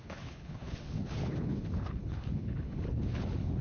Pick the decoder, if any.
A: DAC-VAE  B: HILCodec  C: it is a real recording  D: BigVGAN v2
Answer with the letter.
B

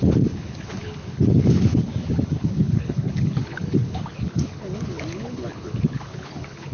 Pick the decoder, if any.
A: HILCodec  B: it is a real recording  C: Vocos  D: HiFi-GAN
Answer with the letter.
A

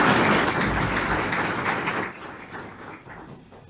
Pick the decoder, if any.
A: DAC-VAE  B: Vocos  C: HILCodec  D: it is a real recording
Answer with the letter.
D